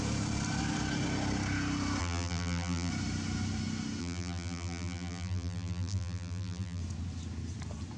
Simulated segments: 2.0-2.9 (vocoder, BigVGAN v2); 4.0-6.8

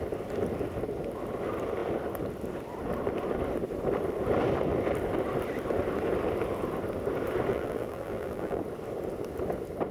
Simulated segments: 7.5-8.6 (vocoder, BigVGAN v2)

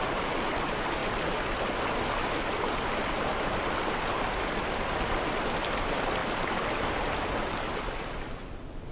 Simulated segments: 0.0-1.0 (vocoder, BigVGAN v2); 3.9-8.9

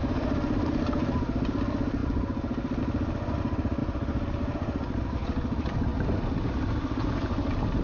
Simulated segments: 2.0-2.8 (vocoder, BigVGAN v2); 3.8-4.4